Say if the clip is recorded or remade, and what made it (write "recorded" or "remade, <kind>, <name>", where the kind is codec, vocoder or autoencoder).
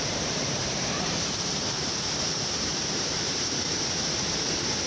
remade, vocoder, BigVGAN v2